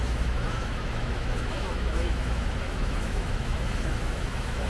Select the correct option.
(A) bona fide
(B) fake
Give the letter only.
B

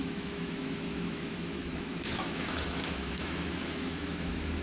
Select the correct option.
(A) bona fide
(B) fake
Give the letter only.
B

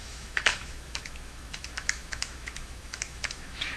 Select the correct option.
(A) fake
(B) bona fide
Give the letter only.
A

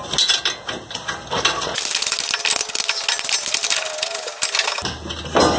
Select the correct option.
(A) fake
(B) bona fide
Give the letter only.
B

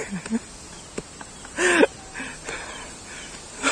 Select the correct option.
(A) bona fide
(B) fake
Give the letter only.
A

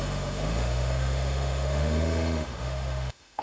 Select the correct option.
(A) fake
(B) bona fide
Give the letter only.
A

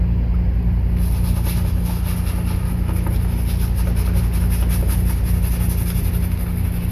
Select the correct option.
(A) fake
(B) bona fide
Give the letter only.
B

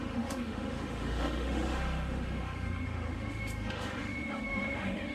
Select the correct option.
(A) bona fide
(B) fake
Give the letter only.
B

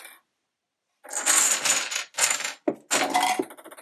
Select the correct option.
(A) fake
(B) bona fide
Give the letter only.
B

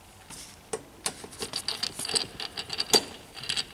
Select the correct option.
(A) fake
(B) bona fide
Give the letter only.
B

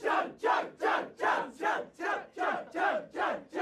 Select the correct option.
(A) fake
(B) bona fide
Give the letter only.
B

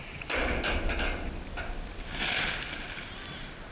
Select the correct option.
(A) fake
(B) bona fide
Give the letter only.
B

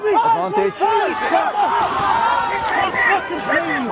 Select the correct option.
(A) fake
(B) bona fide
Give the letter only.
B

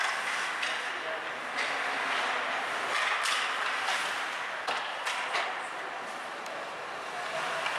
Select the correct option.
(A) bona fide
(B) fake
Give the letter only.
A